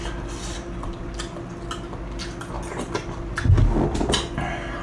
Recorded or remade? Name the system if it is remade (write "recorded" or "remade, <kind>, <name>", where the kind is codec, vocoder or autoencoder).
recorded